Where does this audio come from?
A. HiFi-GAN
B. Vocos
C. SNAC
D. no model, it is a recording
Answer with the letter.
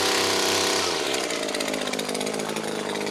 D